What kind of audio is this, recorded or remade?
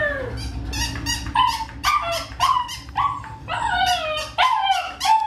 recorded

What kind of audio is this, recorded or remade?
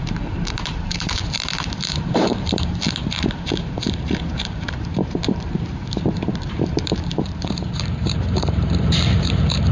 remade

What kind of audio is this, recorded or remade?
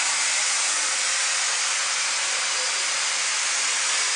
recorded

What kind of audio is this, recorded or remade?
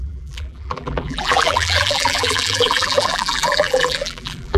remade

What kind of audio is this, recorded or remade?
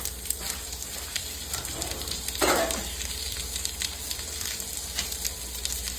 remade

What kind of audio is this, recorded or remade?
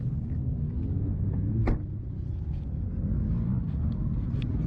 recorded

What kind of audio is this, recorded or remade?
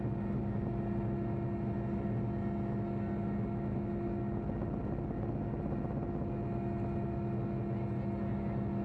recorded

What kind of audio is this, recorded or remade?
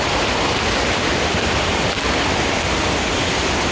remade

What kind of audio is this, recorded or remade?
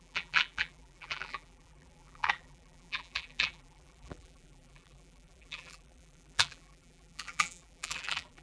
remade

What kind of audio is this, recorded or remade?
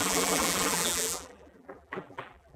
remade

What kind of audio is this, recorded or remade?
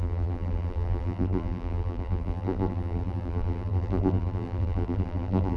remade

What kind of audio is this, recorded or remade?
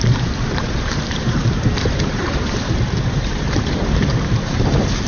remade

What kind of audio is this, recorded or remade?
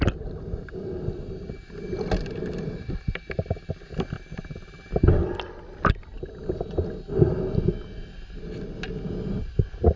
recorded